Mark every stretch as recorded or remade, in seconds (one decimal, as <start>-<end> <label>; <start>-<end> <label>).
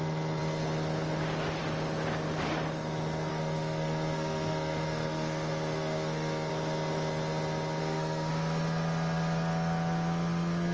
0.0-3.3 recorded; 3.3-6.5 remade; 6.5-7.8 recorded; 7.8-8.3 remade; 8.3-10.7 recorded